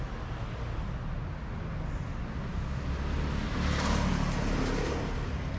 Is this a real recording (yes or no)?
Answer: yes